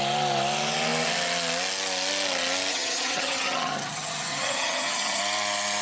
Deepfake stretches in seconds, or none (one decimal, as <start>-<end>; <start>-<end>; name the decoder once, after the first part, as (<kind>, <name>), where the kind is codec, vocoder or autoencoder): 2.7-5.2 (vocoder, HiFi-GAN)